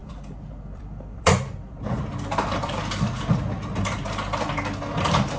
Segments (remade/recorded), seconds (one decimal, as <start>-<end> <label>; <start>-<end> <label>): 0.0-3.2 remade; 3.2-5.4 recorded